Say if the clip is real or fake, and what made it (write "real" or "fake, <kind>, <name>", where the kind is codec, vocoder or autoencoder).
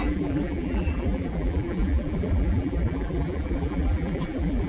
fake, vocoder, BigVGAN v2